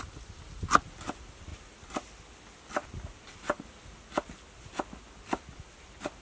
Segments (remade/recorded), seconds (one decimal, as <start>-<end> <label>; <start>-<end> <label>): 0.0-6.2 recorded

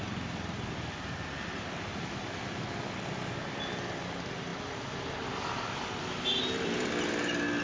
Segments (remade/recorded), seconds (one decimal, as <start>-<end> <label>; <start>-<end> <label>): 0.0-7.6 recorded

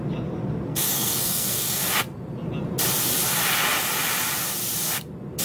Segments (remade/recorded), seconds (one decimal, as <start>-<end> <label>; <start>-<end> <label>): 0.0-0.7 recorded; 0.7-1.8 remade; 1.8-5.4 recorded

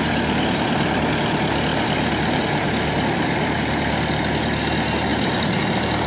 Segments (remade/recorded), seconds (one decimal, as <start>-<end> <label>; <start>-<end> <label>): 0.0-1.7 recorded; 1.7-3.8 remade; 3.8-5.1 recorded; 5.1-5.6 remade; 5.6-6.1 recorded

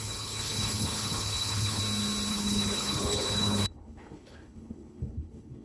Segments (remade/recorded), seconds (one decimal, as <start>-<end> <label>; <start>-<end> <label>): 0.0-1.8 remade; 1.8-2.3 recorded; 2.3-5.6 remade

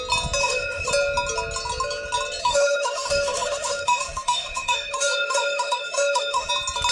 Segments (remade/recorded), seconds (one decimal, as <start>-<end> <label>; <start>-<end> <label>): 0.0-0.4 recorded; 0.4-0.9 remade; 0.9-2.4 recorded; 2.4-6.5 remade; 6.5-6.9 recorded

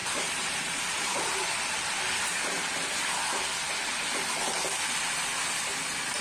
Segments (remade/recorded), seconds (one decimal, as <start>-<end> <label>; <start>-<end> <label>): 0.0-2.4 remade; 2.4-6.2 recorded